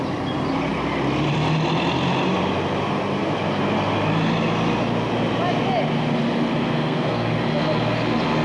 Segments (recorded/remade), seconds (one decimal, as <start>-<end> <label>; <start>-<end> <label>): 0.0-6.5 recorded; 6.5-7.3 remade; 7.3-8.4 recorded